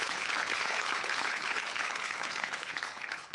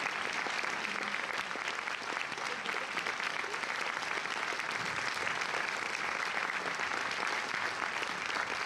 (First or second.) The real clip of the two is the second